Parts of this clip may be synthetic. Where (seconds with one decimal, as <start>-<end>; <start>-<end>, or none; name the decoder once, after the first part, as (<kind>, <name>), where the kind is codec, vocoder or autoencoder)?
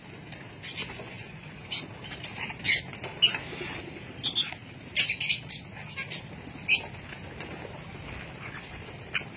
0.8-1.9 (vocoder, Vocos)